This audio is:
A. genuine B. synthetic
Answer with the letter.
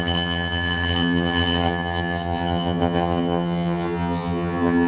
B